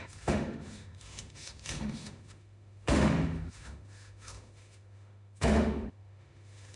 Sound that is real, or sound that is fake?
fake